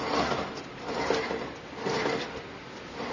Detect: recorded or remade recorded